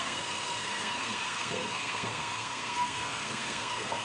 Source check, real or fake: fake